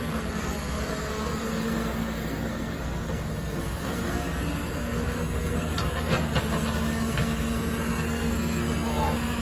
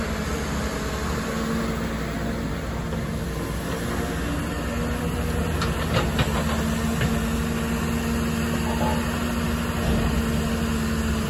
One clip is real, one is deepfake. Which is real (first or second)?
second